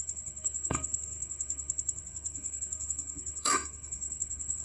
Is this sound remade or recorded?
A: remade